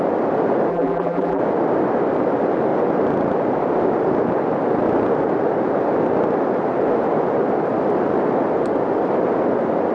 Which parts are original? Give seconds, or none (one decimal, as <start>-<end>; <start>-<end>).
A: 0.0-0.7; 1.4-9.9